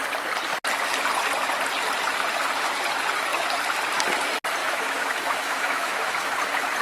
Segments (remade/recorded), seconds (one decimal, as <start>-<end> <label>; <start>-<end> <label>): 0.0-4.6 recorded; 4.6-6.3 remade; 6.3-6.8 recorded